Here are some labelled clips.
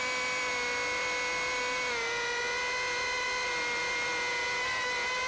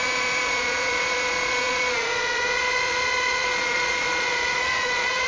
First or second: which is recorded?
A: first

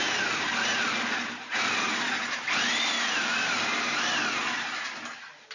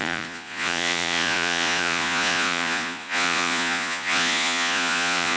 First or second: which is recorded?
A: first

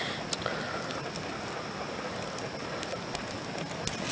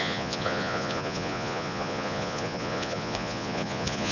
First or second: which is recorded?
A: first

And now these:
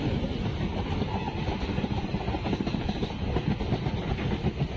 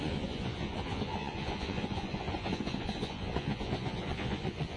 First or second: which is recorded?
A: first